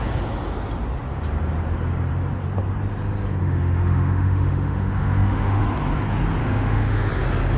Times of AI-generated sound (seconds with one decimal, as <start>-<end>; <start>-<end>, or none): 3.4-5.6; 6.4-7.1